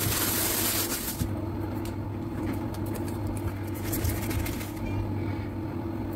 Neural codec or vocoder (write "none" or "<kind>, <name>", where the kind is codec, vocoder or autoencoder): none